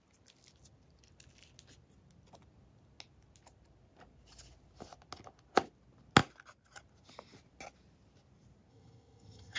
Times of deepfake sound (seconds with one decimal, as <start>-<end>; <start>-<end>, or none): 8.7-9.6